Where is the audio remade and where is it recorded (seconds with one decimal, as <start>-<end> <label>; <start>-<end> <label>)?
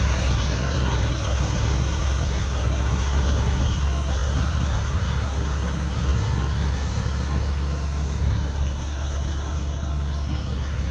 0.0-10.9 remade